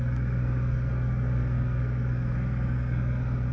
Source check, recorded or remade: remade